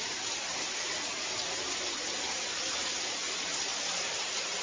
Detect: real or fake real